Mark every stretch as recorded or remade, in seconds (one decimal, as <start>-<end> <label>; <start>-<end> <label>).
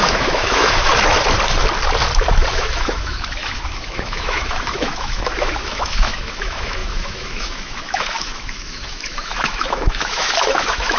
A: 0.0-0.9 remade; 0.9-2.5 recorded; 2.5-11.0 remade